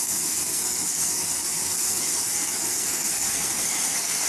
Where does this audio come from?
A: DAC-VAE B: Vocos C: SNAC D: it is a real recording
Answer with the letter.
C